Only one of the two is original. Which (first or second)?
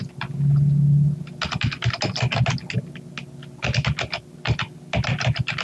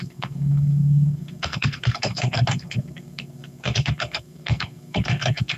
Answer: first